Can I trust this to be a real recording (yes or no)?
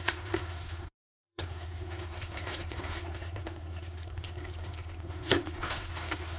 no